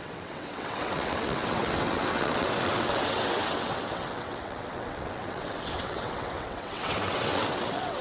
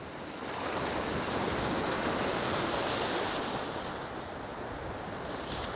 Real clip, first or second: second